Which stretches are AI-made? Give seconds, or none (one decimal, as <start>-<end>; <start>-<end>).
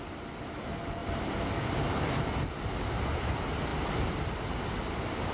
1.0-1.9; 3.7-4.3